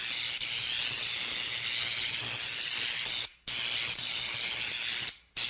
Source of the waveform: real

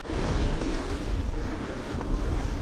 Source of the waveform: fake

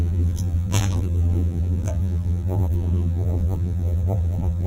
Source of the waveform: fake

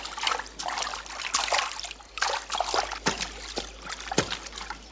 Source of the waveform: real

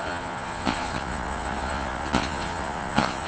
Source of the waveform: fake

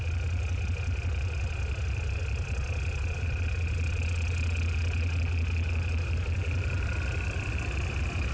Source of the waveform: real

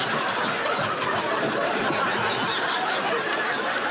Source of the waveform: real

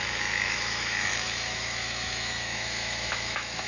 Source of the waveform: fake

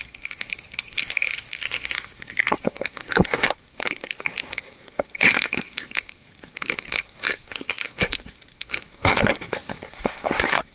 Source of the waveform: fake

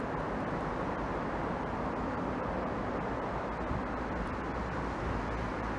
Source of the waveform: real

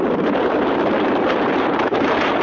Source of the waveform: fake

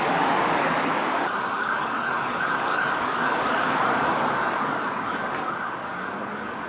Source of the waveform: fake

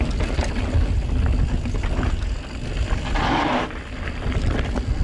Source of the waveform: real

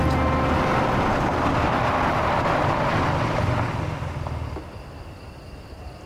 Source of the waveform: real